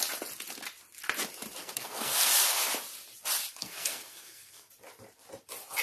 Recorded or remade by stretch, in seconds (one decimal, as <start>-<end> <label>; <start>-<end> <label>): 0.0-1.6 recorded; 1.6-2.3 remade; 2.3-3.6 recorded; 3.6-4.7 remade; 4.7-5.8 recorded